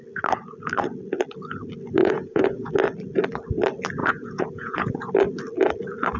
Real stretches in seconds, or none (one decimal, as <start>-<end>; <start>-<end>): 0.0-2.0; 2.7-4.0; 5.1-6.2